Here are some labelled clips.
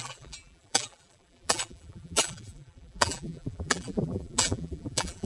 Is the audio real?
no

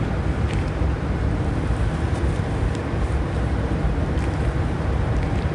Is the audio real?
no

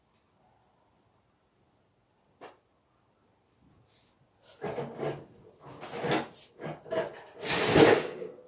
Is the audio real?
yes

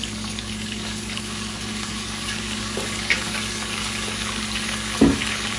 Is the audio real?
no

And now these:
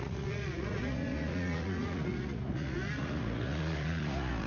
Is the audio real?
no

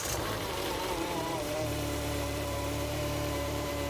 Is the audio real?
no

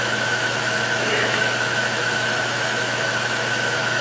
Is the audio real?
no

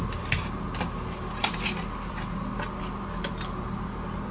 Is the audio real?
yes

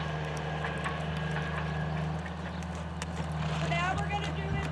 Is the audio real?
yes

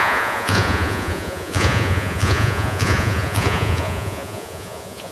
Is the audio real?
no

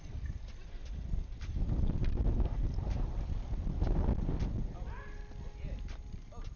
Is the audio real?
yes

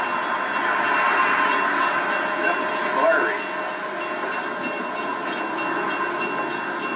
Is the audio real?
yes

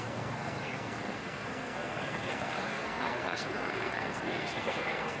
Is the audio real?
no